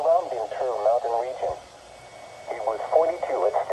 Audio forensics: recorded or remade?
recorded